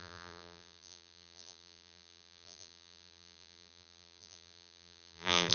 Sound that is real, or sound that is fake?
fake